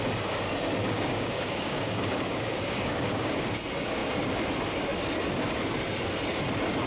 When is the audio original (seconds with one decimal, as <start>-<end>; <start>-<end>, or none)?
0.0-0.8; 3.3-6.9